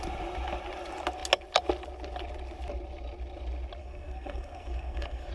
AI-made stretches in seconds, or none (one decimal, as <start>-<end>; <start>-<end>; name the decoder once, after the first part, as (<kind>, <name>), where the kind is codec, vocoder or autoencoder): 3.8-5.3 (codec, SNAC)